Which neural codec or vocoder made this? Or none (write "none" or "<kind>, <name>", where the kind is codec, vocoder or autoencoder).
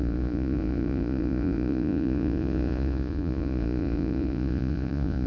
vocoder, Vocos